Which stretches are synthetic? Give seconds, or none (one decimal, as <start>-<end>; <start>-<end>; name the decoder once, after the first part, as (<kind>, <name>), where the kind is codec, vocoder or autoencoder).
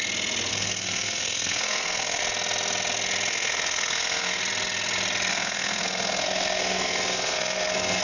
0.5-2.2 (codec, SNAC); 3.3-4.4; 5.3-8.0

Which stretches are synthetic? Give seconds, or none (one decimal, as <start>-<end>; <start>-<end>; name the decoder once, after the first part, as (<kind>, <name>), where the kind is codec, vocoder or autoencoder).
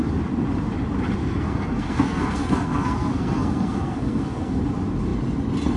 1.2-4.6 (codec, SNAC)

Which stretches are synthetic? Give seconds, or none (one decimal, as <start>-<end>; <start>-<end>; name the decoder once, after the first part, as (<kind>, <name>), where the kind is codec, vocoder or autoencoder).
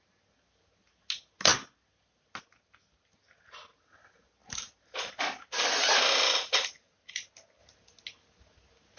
none